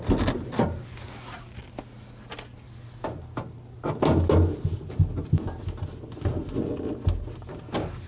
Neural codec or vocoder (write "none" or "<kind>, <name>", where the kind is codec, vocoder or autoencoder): none